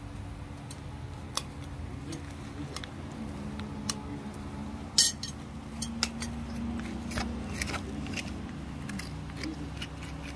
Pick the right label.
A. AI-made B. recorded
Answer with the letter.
B